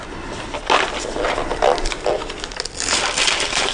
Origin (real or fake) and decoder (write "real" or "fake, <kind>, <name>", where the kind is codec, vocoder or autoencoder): real